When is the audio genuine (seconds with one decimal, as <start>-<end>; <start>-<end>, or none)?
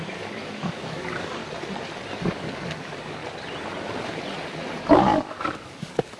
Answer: 1.4-2.2; 3.2-4.8